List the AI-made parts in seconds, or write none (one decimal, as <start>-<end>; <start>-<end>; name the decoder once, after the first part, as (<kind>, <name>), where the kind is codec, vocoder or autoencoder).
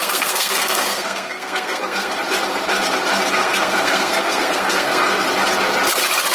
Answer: 0.0-2.1 (codec, SNAC); 3.4-5.3